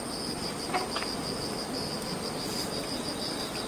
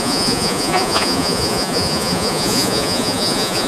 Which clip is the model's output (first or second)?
second